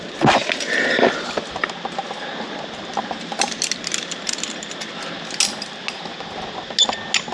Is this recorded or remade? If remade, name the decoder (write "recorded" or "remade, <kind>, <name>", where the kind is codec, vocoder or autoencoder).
recorded